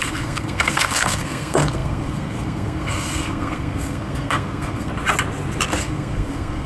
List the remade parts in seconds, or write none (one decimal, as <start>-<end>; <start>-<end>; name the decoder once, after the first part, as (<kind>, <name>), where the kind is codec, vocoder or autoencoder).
0.0-4.9 (codec, SNAC); 5.8-6.7